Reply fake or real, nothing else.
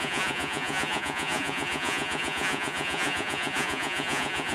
fake